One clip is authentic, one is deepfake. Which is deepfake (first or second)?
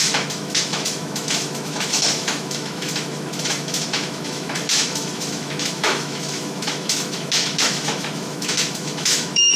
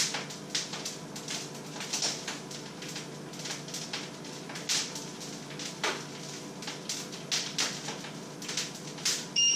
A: first